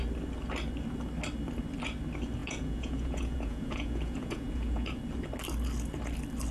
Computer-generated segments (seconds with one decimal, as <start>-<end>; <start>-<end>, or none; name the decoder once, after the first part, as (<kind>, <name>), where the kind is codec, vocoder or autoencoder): 2.4-5.0 (vocoder, Vocos)